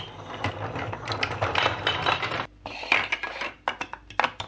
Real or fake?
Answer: real